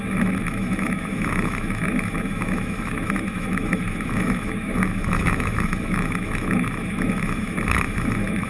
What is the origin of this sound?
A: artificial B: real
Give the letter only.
A